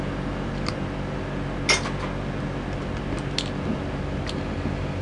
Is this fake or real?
real